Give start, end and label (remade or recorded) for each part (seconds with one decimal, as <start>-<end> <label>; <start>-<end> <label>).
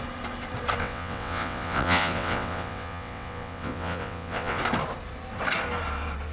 0.0-0.8 recorded; 0.8-4.6 remade; 4.6-6.3 recorded